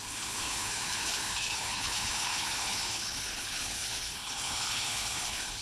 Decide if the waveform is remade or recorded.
remade